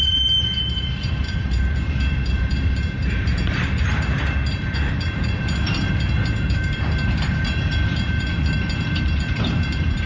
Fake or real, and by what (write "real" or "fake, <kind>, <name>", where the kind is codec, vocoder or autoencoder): fake, vocoder, BigVGAN v2